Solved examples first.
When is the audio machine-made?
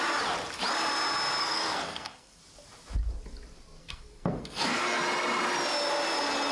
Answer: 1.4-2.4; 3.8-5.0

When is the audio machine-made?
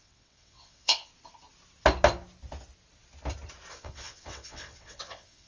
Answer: 0.0-1.1; 3.7-5.5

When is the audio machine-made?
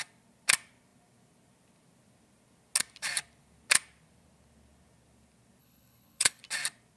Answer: 5.6-6.4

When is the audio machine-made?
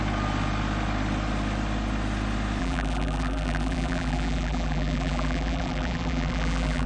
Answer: 2.6-6.9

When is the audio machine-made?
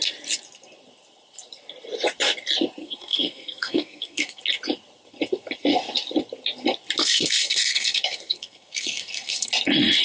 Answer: 2.8-4.4; 7.0-9.5